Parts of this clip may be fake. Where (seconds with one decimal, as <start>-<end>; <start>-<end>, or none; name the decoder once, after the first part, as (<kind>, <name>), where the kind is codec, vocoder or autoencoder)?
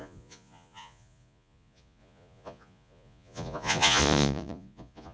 0.0-5.1 (vocoder, Vocos)